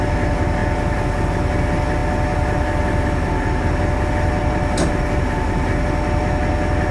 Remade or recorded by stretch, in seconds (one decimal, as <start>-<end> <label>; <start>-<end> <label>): 0.0-6.9 recorded